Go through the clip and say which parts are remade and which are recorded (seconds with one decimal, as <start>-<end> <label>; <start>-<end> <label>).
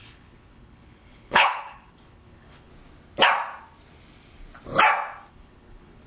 0.0-2.7 remade; 2.7-5.3 recorded; 5.3-6.1 remade